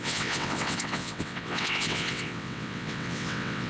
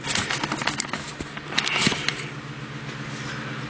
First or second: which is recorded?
second